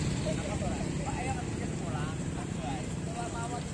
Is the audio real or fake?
real